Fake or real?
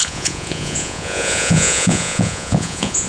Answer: fake